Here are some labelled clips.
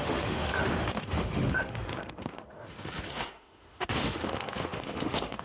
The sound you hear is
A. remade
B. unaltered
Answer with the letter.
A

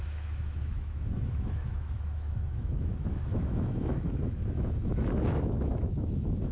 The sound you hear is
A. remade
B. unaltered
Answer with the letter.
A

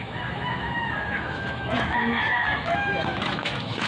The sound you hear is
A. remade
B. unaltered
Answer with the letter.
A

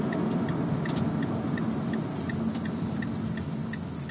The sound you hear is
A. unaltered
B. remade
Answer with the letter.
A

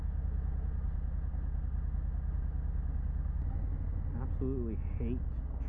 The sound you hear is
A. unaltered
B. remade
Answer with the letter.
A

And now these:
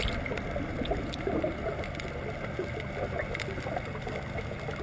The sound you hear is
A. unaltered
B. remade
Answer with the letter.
A